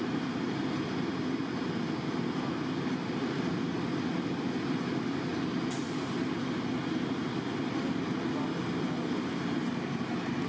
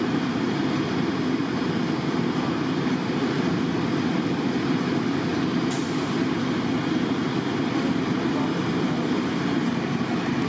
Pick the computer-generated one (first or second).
second